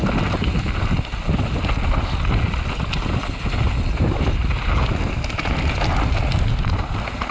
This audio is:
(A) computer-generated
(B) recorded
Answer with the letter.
B